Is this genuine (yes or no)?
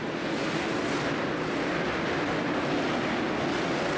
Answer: yes